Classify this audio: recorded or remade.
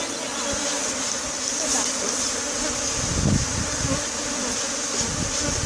recorded